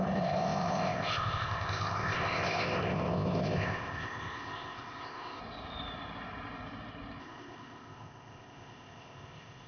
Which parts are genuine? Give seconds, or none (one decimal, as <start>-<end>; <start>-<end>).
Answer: 5.4-7.2